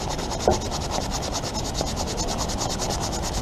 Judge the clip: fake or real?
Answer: real